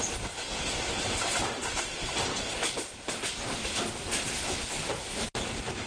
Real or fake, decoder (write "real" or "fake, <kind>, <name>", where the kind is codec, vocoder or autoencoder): real